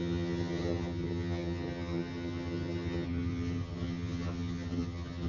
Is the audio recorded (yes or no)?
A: no